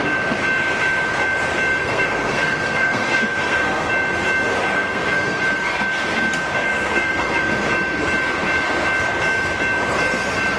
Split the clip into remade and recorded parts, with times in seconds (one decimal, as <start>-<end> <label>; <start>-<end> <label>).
0.0-1.7 recorded; 1.7-3.9 remade; 3.9-4.7 recorded; 4.7-5.4 remade; 5.4-6.6 recorded; 6.6-7.5 remade; 7.5-10.6 recorded